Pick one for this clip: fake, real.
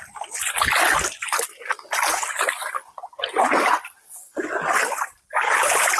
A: real